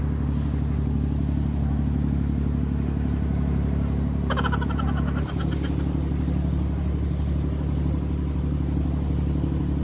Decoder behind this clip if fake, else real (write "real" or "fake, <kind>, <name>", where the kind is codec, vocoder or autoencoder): real